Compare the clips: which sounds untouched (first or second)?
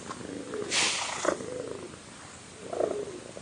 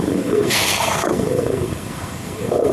first